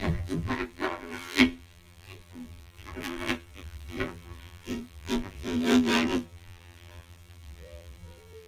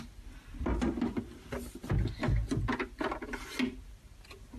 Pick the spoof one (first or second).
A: first